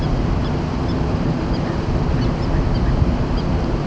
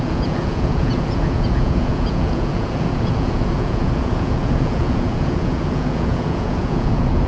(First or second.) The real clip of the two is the first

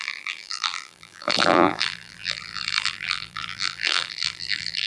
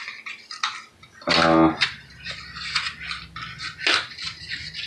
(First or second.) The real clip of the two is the second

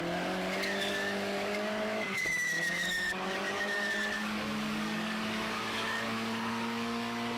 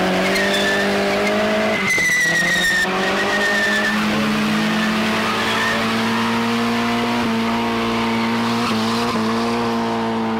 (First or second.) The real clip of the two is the second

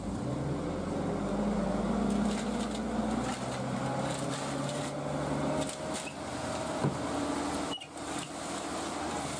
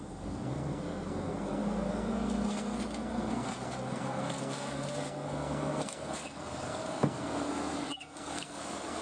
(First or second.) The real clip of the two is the first